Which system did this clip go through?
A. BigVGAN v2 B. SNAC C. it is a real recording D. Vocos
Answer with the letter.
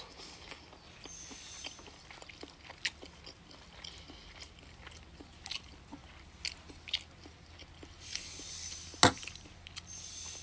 C